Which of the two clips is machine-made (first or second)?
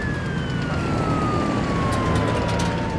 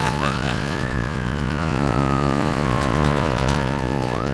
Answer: second